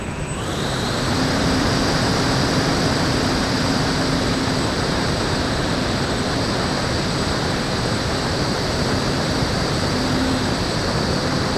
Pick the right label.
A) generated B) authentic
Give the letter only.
A